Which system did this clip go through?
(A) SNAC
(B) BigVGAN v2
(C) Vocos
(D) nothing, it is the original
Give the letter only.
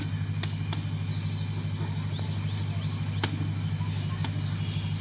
D